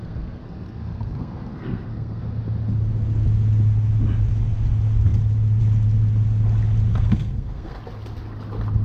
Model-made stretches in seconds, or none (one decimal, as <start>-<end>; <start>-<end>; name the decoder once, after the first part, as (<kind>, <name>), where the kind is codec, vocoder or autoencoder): 0.0-2.2 (codec, SNAC); 6.9-7.8